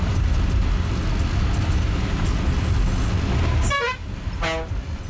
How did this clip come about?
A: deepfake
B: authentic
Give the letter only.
B